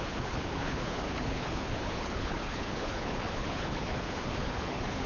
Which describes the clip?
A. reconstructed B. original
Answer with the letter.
A